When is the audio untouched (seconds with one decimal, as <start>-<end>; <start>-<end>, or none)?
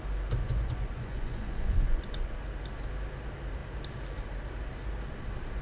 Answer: 0.0-0.4; 2.3-5.6